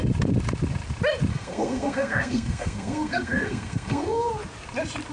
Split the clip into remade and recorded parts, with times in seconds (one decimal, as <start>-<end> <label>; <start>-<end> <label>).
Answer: 0.0-1.3 recorded; 1.3-4.3 remade; 4.3-5.1 recorded